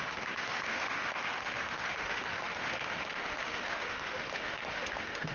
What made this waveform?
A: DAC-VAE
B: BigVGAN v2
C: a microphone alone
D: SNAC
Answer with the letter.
A